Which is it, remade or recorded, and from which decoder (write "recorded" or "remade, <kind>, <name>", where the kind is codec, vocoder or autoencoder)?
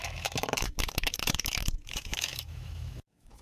remade, autoencoder, DAC-VAE